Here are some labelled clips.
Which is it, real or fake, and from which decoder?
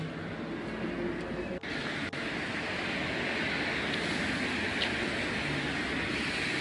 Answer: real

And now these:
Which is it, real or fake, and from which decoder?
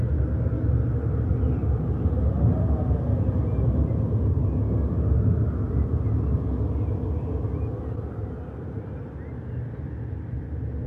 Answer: real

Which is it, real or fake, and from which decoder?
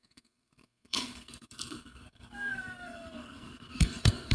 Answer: fake, codec, SNAC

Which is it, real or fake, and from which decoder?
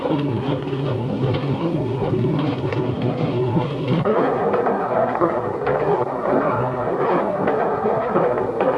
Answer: fake, codec, SNAC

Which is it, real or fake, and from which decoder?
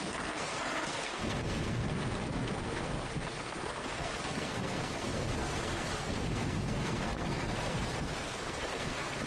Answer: fake, codec, SNAC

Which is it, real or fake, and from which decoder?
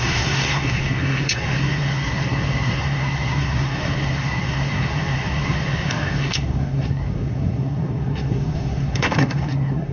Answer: fake, codec, SNAC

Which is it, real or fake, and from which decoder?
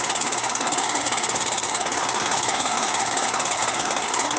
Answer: fake, codec, SNAC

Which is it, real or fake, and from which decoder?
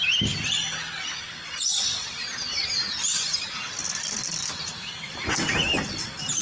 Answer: real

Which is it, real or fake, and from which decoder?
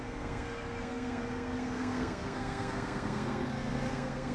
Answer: fake, codec, SNAC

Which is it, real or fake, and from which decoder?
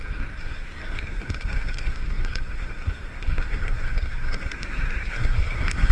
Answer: fake, codec, SNAC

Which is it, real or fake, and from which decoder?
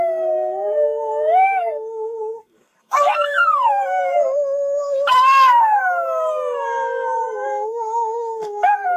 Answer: fake, codec, SNAC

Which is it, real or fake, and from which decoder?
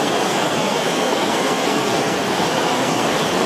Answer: fake, codec, SNAC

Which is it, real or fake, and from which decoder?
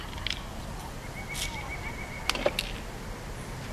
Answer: real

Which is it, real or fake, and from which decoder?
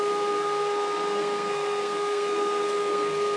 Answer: fake, codec, SNAC